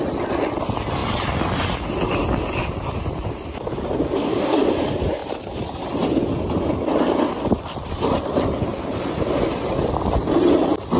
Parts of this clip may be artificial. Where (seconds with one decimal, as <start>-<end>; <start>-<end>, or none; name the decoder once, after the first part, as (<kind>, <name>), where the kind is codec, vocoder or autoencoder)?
4.2-4.7 (codec, DAC)